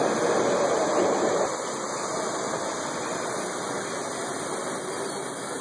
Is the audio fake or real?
real